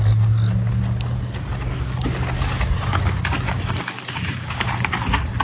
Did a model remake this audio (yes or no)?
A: no